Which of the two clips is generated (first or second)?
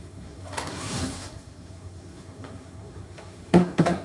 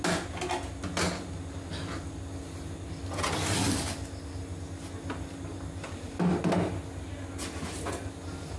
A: first